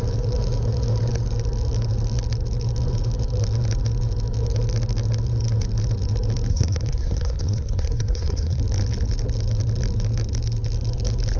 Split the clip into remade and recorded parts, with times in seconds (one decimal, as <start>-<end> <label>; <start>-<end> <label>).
0.0-6.5 recorded; 6.5-8.6 remade; 8.6-11.4 recorded